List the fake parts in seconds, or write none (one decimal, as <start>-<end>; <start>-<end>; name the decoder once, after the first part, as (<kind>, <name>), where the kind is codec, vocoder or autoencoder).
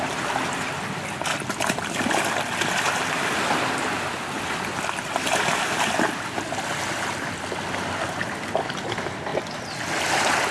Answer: none